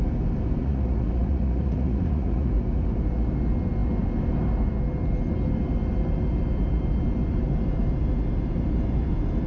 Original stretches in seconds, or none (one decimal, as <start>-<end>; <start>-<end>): 0.0-0.6; 2.5-9.5